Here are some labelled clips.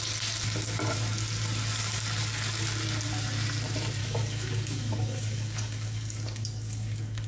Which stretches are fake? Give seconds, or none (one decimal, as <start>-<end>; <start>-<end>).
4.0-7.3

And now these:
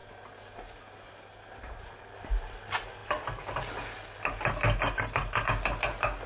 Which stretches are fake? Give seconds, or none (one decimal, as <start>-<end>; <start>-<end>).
none

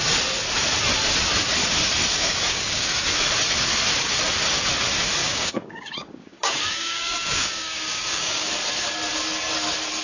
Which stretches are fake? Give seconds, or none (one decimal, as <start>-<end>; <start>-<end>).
2.1-2.9; 5.2-8.5

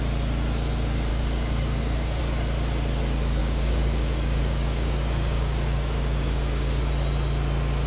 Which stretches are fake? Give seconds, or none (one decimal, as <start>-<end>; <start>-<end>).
1.1-2.2; 3.4-6.8

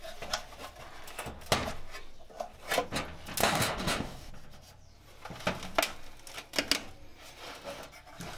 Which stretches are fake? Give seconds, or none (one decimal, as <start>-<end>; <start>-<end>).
3.4-4.3

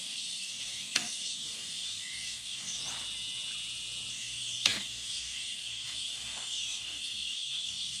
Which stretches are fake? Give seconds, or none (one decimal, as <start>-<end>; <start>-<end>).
0.0-2.8; 4.1-8.0

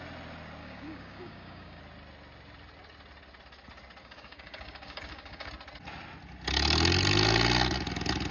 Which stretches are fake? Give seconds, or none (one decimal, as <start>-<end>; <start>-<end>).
0.6-1.8; 4.0-5.5